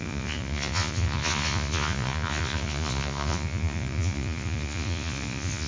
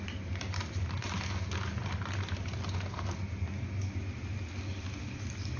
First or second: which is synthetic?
first